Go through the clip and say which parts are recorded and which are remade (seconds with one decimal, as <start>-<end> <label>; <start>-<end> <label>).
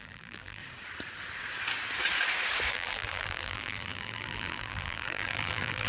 0.0-0.6 remade; 0.6-2.7 recorded; 2.7-5.9 remade